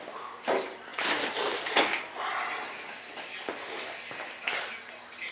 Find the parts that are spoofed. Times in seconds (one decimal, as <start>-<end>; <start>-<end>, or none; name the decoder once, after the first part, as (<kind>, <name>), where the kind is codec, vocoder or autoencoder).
none